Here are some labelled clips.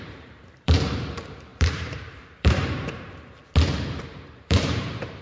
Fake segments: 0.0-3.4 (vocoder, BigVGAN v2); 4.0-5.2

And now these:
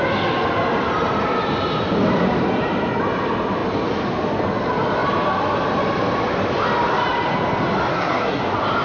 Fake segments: 7.9-8.4 (codec, SNAC)

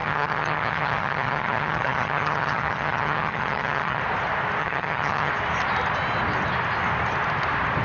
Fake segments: 0.0-4.0 (vocoder, HiFi-GAN); 4.6-5.3

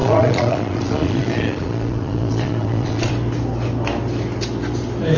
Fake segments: 0.0-3.1 (vocoder, Vocos)

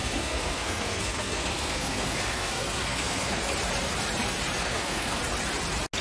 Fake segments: 0.0-3.4 (codec, SNAC); 4.6-5.2

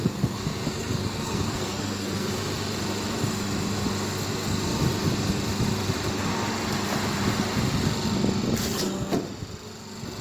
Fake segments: 0.0-2.3 (codec, SNAC)

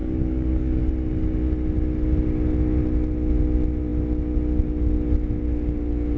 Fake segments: 0.0-0.9 (codec, DAC)

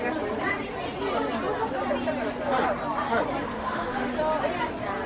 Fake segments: 3.5-4.1 (autoencoder, DAC-VAE)